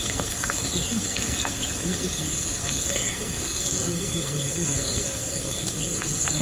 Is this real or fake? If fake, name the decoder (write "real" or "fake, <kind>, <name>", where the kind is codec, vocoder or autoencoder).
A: fake, codec, SNAC